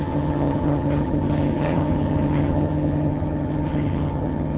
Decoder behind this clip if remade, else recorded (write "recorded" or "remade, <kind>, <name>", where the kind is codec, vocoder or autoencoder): remade, vocoder, HiFi-GAN